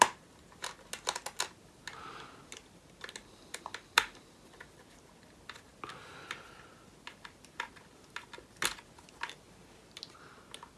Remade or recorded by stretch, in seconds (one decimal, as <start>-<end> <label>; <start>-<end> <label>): 0.0-10.8 recorded